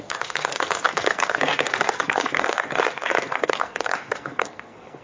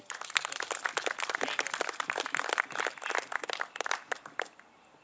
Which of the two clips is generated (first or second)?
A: first